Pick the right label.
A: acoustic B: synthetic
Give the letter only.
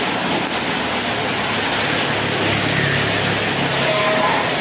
A